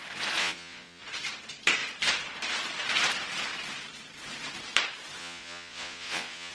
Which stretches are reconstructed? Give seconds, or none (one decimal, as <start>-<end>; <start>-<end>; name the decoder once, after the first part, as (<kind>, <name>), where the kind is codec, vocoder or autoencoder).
0.4-1.0 (vocoder, Vocos); 5.2-6.5